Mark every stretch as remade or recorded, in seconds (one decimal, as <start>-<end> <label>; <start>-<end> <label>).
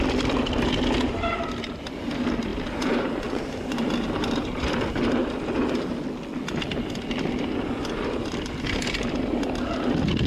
0.0-2.5 recorded; 2.5-4.9 remade; 4.9-10.3 recorded